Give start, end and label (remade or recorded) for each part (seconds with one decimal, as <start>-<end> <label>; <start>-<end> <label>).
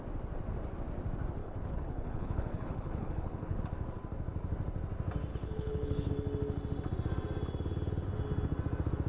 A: 0.0-1.4 recorded; 1.4-3.6 remade; 3.6-5.3 recorded; 5.3-6.1 remade; 6.1-9.1 recorded